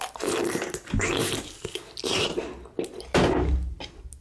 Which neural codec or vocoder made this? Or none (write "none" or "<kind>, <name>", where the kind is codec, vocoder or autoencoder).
none